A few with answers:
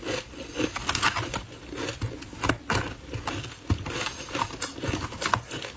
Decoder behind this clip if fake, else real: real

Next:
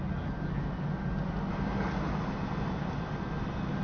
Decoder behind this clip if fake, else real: real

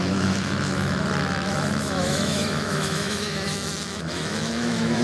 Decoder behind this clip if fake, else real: fake, autoencoder, DAC-VAE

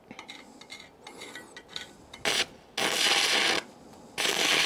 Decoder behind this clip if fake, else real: real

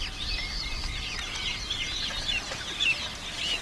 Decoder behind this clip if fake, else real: real